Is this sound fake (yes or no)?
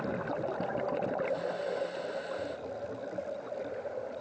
no